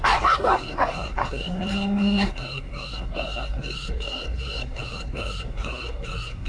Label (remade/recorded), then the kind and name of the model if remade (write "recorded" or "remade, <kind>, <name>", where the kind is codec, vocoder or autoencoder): remade, codec, SNAC